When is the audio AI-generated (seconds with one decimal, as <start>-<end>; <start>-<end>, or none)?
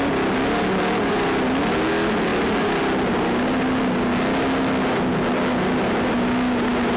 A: none